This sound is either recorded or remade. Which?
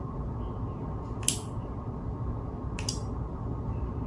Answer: recorded